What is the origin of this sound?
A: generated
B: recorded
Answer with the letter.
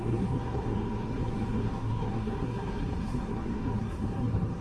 A